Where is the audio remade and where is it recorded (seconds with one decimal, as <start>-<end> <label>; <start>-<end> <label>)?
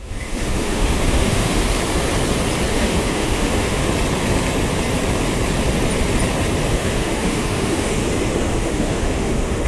0.0-1.6 remade; 1.6-2.7 recorded; 2.7-3.8 remade; 3.8-6.7 recorded; 6.7-8.0 remade; 8.0-8.5 recorded; 8.5-9.7 remade